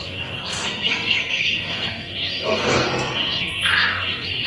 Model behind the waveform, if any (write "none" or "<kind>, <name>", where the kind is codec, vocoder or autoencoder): codec, SNAC